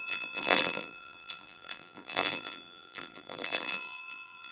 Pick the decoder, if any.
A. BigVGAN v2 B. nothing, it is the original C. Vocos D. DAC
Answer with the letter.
A